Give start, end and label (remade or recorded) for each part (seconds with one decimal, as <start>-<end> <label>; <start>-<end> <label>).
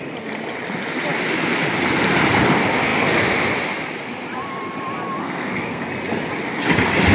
0.0-5.2 recorded; 5.2-5.8 remade; 5.8-7.1 recorded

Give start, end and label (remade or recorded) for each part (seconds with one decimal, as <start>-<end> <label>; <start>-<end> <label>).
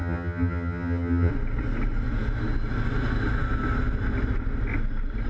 0.0-1.3 remade; 1.3-5.3 recorded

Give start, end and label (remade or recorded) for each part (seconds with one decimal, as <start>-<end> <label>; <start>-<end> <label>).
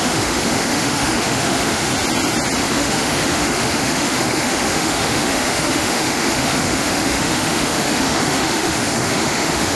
0.0-1.9 remade; 1.9-2.6 recorded; 2.6-9.8 remade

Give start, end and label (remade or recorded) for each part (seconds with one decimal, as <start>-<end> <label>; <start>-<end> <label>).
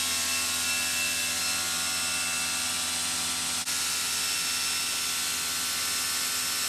0.0-6.7 recorded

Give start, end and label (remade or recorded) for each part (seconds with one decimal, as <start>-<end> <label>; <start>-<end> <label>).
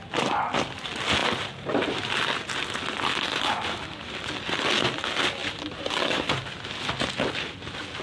0.0-5.4 recorded; 5.4-6.4 remade; 6.4-8.0 recorded